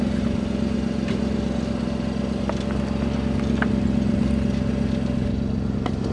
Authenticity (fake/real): real